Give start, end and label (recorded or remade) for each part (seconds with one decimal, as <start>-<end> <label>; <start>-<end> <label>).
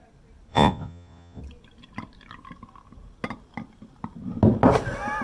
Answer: 0.0-0.5 recorded; 0.5-1.4 remade; 1.4-5.2 recorded